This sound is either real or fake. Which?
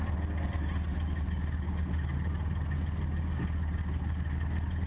real